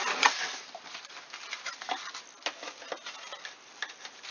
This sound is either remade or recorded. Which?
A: recorded